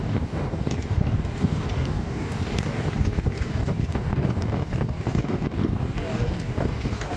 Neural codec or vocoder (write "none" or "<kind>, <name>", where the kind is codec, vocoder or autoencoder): codec, DAC